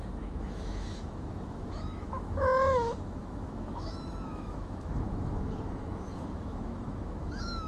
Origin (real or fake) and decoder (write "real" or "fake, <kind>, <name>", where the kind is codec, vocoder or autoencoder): fake, autoencoder, DAC-VAE